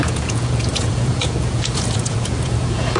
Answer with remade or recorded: remade